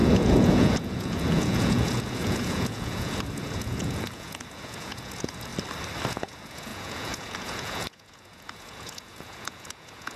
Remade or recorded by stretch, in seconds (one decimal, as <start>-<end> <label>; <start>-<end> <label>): 0.0-5.5 remade; 5.5-6.1 recorded; 6.1-10.2 remade